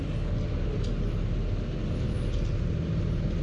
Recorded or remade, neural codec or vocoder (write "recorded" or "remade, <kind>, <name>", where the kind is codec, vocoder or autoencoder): recorded